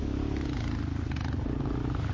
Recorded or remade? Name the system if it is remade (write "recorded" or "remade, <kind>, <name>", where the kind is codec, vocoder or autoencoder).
recorded